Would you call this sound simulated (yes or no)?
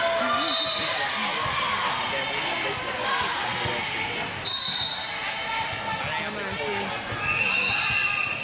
no